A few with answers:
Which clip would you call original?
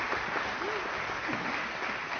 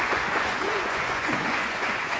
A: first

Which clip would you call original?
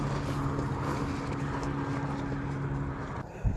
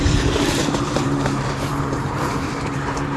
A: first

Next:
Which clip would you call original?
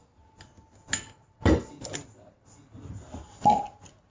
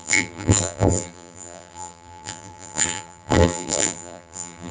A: first